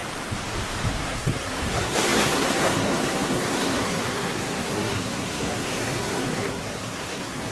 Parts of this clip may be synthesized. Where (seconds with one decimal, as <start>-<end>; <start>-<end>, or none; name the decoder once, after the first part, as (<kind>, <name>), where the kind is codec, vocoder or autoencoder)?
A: 0.9-7.5 (codec, SNAC)